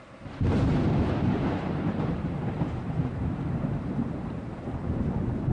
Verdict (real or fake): fake